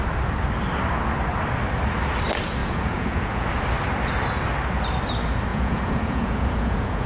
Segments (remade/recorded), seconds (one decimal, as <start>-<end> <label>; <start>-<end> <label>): 0.0-2.6 recorded; 2.6-3.5 remade; 3.5-5.5 recorded; 5.5-7.1 remade